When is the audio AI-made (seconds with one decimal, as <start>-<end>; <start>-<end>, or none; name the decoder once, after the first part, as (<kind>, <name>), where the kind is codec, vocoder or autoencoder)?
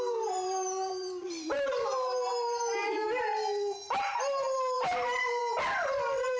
0.0-5.4 (vocoder, BigVGAN v2)